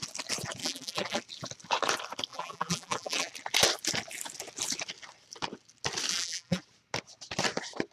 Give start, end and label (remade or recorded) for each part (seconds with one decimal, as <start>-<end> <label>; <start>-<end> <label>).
0.0-0.6 recorded; 0.6-1.2 remade; 1.2-2.3 recorded; 2.3-3.3 remade; 3.3-6.1 recorded; 6.1-6.6 remade; 6.6-7.9 recorded